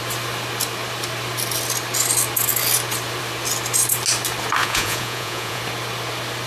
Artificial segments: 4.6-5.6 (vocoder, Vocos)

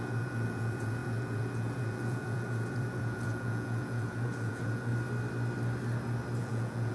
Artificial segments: 0.0-4.9 (vocoder, Vocos); 6.4-6.9

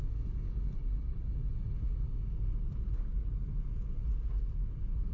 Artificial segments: none

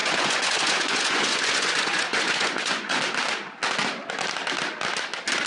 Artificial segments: 0.0-3.0 (vocoder, Vocos)

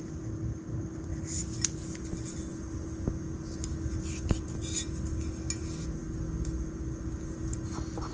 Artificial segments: none

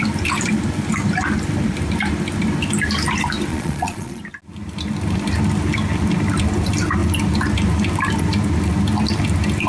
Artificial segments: 3.5-4.2 (vocoder, Vocos)

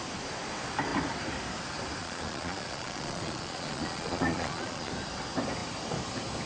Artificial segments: 2.0-4.9 (vocoder, Vocos)

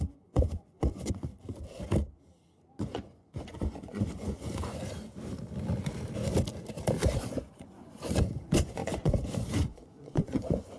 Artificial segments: 0.0-1.3 (vocoder, Vocos); 2.8-4.8; 7.2-10.8